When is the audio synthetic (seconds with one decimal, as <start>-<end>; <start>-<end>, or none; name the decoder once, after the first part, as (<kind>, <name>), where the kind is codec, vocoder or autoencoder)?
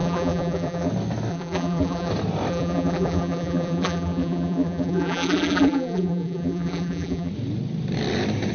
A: 0.0-0.9 (vocoder, BigVGAN v2); 1.3-2.1; 2.5-7.3